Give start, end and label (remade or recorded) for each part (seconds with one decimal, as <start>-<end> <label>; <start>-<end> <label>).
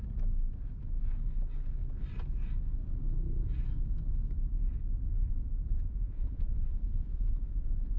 0.0-5.7 recorded; 5.7-8.0 remade